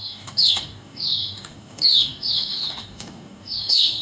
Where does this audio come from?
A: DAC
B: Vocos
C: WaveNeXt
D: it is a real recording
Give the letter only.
A